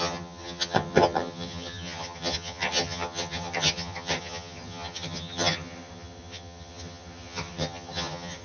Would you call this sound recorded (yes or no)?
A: no